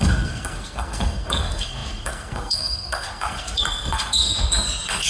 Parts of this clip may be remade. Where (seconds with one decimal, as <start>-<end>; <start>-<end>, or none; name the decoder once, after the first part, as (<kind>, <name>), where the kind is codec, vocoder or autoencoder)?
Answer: 0.0-5.1 (codec, SNAC)